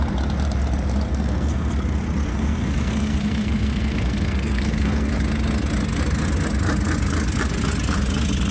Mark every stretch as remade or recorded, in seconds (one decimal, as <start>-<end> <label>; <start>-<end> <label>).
0.0-1.1 recorded; 1.1-1.7 remade; 1.7-2.3 recorded; 2.3-5.1 remade; 5.1-8.5 recorded

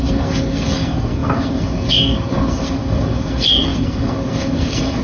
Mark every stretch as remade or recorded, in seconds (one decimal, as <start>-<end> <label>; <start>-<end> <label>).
0.0-5.0 remade

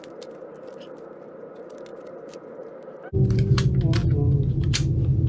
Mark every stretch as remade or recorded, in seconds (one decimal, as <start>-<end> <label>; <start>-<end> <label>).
0.0-5.3 recorded

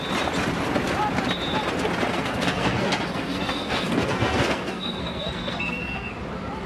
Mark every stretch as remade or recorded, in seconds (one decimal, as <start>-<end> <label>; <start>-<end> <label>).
0.0-2.1 recorded; 2.1-6.1 remade; 6.1-6.7 recorded

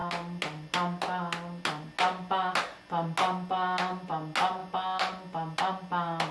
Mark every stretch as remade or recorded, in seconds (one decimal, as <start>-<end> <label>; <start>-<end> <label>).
0.0-6.3 recorded

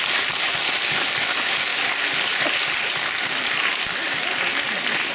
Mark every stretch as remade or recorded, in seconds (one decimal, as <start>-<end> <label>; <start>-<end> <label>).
0.0-5.1 recorded